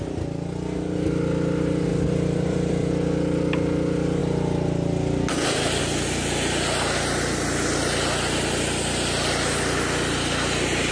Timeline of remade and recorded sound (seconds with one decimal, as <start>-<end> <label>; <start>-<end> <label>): 0.0-1.9 recorded; 1.9-2.9 remade; 2.9-10.9 recorded